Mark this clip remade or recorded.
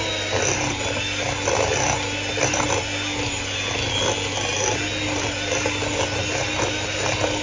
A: recorded